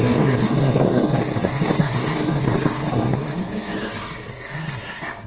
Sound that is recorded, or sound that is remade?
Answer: remade